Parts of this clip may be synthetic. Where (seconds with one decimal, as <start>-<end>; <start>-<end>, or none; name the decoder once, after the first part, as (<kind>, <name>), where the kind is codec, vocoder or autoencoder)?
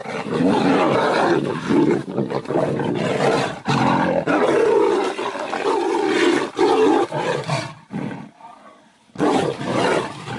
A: 0.0-6.7 (vocoder, BigVGAN v2); 7.5-8.5; 9.3-10.4